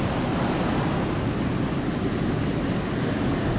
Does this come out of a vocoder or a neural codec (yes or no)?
no